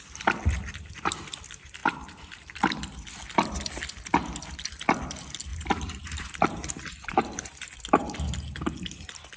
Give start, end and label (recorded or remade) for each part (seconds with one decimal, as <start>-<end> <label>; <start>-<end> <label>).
0.0-1.8 recorded; 1.8-2.8 remade; 2.8-4.1 recorded; 4.1-4.7 remade; 4.7-5.5 recorded; 5.5-8.2 remade; 8.2-9.4 recorded